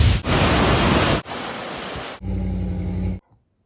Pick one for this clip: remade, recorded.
recorded